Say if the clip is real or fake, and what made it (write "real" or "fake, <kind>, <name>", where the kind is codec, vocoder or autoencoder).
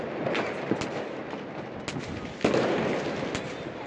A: real